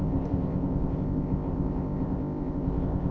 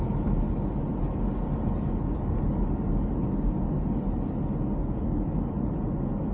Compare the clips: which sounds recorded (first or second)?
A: second